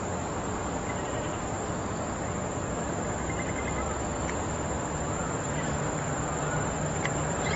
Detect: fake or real fake